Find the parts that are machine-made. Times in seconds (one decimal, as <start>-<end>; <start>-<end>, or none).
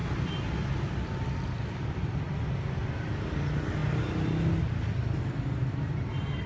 none